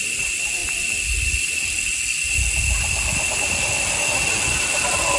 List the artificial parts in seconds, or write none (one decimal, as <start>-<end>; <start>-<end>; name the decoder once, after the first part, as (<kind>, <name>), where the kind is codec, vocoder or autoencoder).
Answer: none